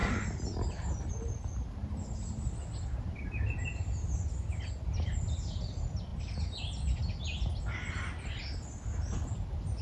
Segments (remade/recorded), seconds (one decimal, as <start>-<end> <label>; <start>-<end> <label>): 0.0-9.8 recorded